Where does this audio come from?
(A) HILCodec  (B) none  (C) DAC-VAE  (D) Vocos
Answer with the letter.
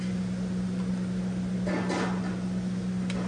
B